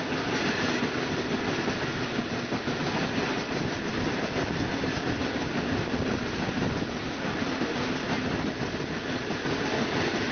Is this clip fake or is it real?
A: real